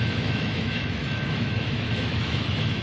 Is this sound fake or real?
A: fake